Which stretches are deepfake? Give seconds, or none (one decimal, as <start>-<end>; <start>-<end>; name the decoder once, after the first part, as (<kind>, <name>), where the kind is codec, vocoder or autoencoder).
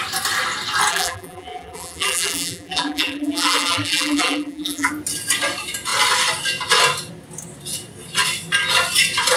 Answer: 0.9-4.9 (vocoder, BigVGAN v2)